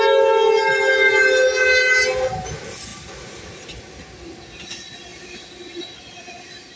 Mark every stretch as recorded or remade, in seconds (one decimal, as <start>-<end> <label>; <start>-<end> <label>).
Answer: 0.0-6.8 recorded